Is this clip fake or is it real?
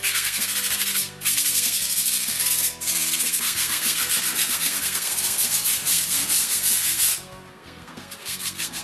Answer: fake